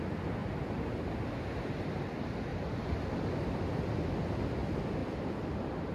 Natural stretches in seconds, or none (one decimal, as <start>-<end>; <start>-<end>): 0.0-2.5; 3.6-5.0